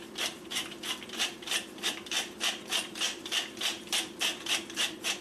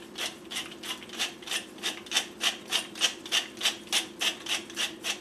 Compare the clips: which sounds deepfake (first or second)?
first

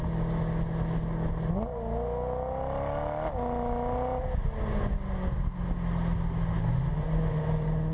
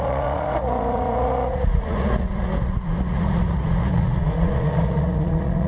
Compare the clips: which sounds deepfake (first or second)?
second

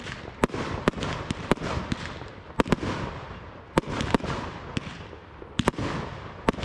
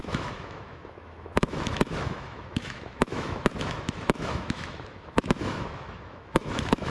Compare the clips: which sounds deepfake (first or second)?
second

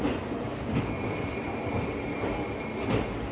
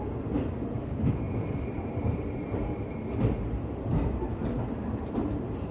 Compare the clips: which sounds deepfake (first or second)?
second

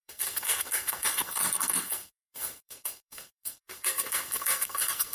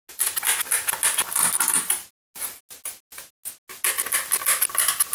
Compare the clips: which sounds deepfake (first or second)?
first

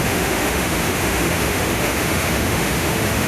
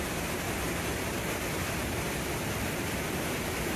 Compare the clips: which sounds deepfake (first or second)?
first